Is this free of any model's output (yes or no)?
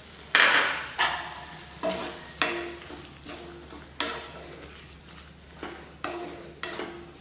yes